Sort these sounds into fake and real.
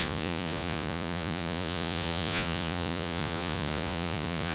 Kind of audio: fake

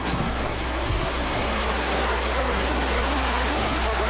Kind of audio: fake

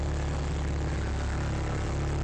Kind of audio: real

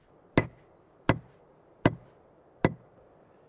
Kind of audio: real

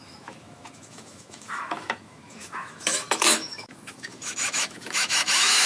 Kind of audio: fake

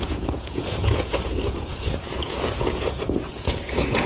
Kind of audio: fake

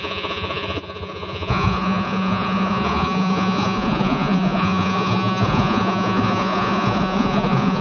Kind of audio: fake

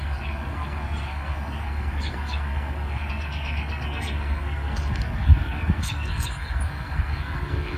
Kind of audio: fake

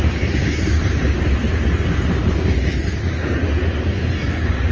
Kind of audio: real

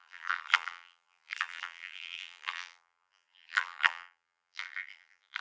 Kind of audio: fake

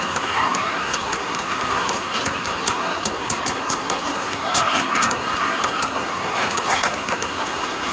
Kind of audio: fake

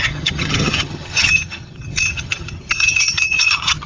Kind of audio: fake